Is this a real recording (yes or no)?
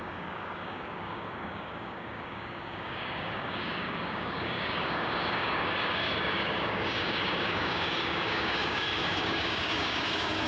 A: no